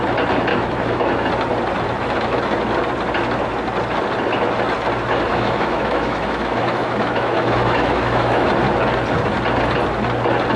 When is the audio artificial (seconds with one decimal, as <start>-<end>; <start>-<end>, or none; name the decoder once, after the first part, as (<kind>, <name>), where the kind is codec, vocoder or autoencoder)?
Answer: 0.5-1.3 (autoencoder, DAC-VAE); 5.3-8.5